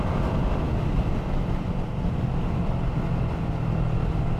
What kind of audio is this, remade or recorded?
recorded